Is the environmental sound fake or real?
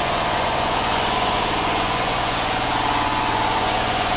fake